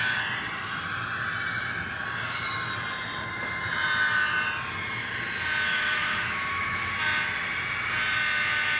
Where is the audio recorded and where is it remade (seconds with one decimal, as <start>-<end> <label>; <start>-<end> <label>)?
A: 0.0-5.7 recorded; 5.7-6.9 remade; 6.9-8.8 recorded

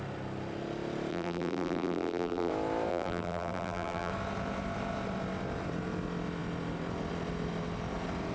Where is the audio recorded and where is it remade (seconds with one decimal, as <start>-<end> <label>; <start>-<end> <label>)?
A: 0.0-1.1 recorded; 1.1-2.5 remade; 2.5-2.9 recorded; 2.9-4.1 remade; 4.1-8.3 recorded

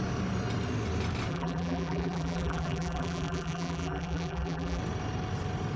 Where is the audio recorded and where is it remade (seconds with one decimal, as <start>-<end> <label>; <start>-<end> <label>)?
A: 0.0-1.3 recorded; 1.3-4.8 remade; 4.8-5.8 recorded

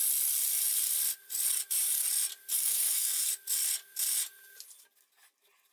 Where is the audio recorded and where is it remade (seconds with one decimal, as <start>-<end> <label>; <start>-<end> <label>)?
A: 0.0-2.6 recorded; 2.6-3.3 remade; 3.3-5.7 recorded

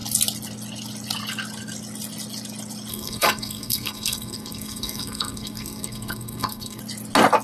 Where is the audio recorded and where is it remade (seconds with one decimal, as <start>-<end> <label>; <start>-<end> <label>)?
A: 0.0-2.9 recorded; 2.9-6.8 remade; 6.8-7.4 recorded

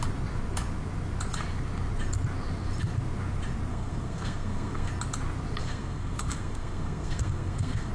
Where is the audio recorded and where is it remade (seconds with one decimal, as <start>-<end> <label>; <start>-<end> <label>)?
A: 0.0-3.7 recorded; 3.7-4.9 remade; 4.9-5.6 recorded; 5.6-7.9 remade